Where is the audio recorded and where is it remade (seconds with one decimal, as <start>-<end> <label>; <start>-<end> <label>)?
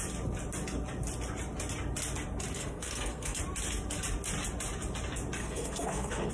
0.0-2.6 recorded; 2.6-3.4 remade; 3.4-5.4 recorded; 5.4-6.3 remade